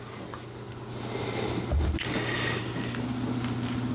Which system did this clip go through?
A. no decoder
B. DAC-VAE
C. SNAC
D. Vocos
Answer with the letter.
A